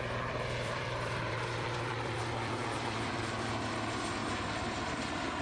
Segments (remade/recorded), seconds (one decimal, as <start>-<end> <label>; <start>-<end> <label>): 0.0-4.2 remade; 4.2-4.7 recorded; 4.7-5.4 remade